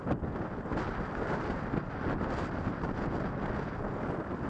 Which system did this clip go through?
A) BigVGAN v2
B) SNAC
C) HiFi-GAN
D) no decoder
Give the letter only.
D